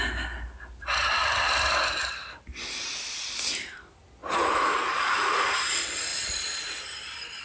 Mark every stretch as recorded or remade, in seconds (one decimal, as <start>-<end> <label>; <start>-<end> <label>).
0.0-4.2 recorded; 4.2-5.5 remade; 5.5-6.1 recorded; 6.1-6.8 remade; 6.8-7.4 recorded